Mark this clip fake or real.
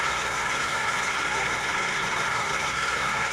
fake